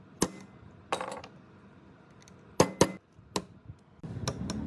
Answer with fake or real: real